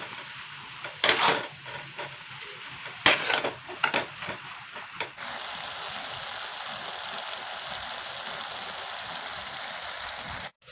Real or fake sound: real